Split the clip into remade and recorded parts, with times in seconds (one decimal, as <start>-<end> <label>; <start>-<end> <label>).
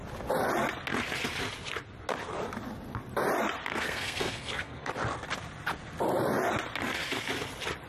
0.0-3.7 recorded; 3.7-4.9 remade; 4.9-7.9 recorded